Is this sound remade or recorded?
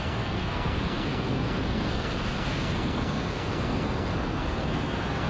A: remade